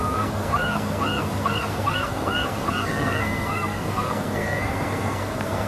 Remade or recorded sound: remade